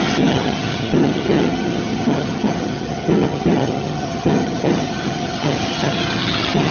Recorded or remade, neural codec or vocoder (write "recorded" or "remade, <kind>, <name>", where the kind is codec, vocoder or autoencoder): remade, vocoder, HiFi-GAN